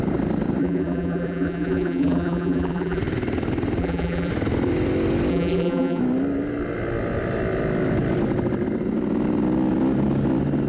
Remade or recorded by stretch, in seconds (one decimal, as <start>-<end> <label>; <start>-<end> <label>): 0.0-0.6 recorded; 0.6-3.0 remade; 3.0-3.8 recorded; 3.8-4.3 remade; 4.3-5.3 recorded; 5.3-6.0 remade; 6.0-10.7 recorded

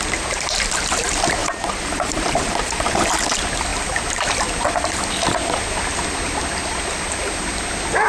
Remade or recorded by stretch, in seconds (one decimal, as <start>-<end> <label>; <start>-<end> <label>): 0.0-1.4 recorded; 1.4-3.1 remade; 3.1-8.1 recorded

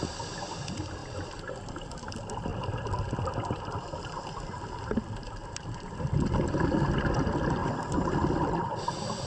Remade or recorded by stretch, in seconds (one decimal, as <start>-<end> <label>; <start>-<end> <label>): 0.0-1.0 recorded; 1.0-1.8 remade; 1.8-2.5 recorded; 2.5-6.8 remade; 6.8-9.3 recorded

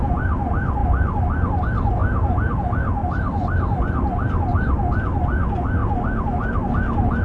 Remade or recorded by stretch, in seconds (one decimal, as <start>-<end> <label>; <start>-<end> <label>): 0.0-3.0 recorded; 3.0-3.8 remade; 3.8-5.8 recorded; 5.8-6.7 remade; 6.7-7.2 recorded

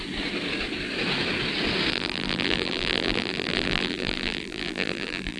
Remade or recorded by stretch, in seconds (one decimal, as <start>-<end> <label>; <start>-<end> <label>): 0.0-1.9 recorded; 1.9-5.4 remade

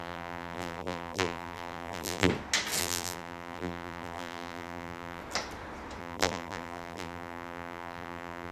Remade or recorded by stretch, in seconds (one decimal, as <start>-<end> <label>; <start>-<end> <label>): 0.0-2.3 remade; 2.3-2.8 recorded; 2.8-5.2 remade; 5.2-6.0 recorded; 6.0-8.5 remade

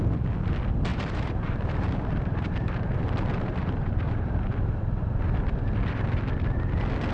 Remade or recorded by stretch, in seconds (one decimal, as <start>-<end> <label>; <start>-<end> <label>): 0.0-0.9 recorded; 0.9-5.1 remade; 5.1-7.1 recorded